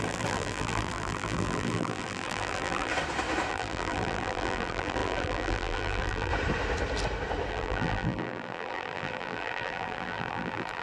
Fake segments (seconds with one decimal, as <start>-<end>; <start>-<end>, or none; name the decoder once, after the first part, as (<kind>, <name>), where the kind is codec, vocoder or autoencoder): 0.0-2.9 (vocoder, BigVGAN v2); 3.5-6.3; 7.5-10.8